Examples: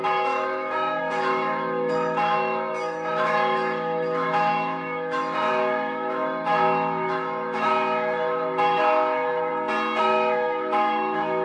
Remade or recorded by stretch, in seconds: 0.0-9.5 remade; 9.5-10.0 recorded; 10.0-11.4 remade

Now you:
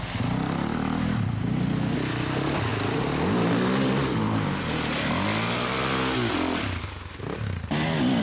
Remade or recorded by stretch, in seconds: 0.0-8.2 recorded

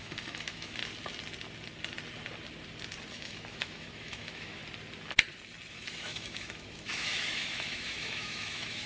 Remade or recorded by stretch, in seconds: 0.0-0.8 remade; 0.8-3.1 recorded; 3.1-4.6 remade; 4.6-5.7 recorded; 5.7-8.9 remade

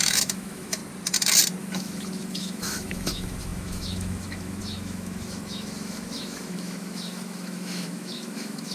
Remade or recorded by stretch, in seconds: 0.0-0.8 remade; 0.8-1.6 recorded; 1.6-8.7 remade

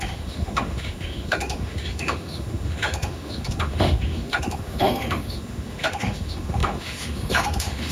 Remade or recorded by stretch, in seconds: 0.0-7.9 remade